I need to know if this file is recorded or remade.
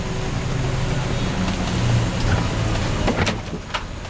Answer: recorded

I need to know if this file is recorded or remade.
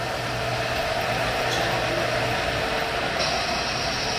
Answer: recorded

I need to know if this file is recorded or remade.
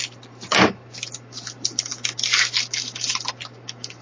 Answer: recorded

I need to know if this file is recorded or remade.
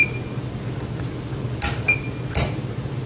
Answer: recorded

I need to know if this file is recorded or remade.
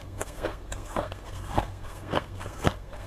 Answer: remade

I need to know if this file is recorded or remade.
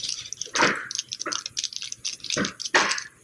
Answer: recorded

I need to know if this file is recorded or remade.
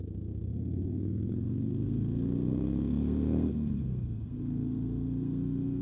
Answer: remade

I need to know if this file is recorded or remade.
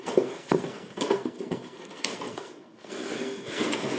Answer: remade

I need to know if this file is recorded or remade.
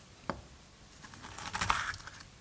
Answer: recorded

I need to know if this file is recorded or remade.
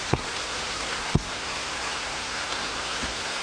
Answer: remade